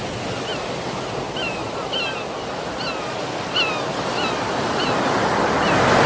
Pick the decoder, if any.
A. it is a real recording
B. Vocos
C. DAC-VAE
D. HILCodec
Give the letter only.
A